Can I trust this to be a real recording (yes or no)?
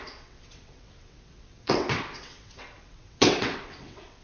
no